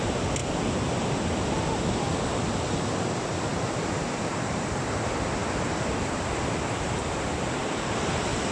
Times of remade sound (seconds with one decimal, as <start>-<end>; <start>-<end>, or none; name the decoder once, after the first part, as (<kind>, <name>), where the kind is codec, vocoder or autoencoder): 0.0-0.4 (vocoder, BigVGAN v2); 1.1-3.5; 4.5-8.5